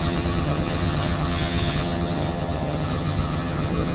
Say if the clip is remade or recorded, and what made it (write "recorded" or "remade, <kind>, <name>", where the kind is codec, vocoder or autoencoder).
remade, vocoder, HiFi-GAN